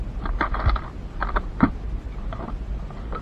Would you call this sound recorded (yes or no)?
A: yes